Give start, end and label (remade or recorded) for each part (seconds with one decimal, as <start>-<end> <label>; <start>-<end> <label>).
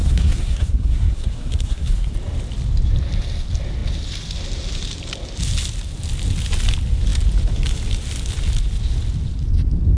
0.0-2.1 remade; 2.1-10.0 recorded